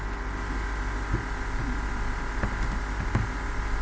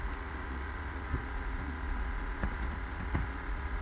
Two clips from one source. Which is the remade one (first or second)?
second